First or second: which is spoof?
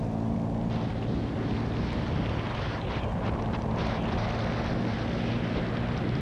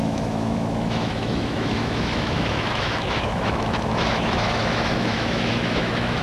second